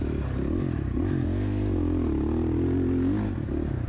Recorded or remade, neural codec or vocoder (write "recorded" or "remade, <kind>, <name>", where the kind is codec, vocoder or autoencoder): recorded